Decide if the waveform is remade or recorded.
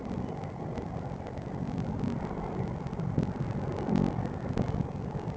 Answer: recorded